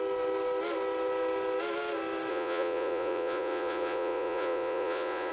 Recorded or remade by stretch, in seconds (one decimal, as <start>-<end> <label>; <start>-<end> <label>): 0.0-2.3 recorded; 2.3-5.3 remade